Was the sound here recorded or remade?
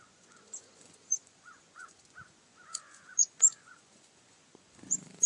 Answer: remade